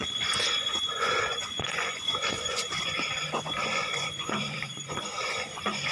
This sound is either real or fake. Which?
fake